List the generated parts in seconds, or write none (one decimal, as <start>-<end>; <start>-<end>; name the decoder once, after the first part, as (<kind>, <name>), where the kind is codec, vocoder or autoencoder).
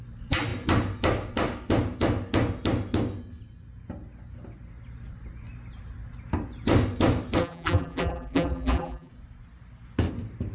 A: 7.4-9.1 (vocoder, BigVGAN v2)